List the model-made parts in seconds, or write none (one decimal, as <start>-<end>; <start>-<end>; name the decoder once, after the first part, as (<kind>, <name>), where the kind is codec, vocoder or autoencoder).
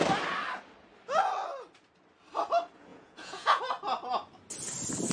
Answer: 2.9-3.6 (vocoder, Vocos)